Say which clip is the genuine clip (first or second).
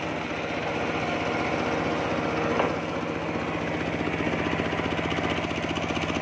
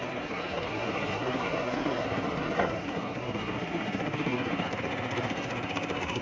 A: first